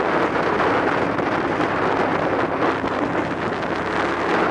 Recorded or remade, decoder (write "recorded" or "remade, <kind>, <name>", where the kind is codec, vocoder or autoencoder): recorded